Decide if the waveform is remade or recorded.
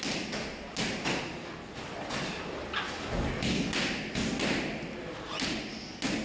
recorded